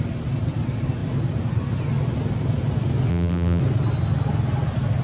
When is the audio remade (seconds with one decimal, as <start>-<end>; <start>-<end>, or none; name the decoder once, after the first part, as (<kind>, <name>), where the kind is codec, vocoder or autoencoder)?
3.1-3.6 (vocoder, BigVGAN v2)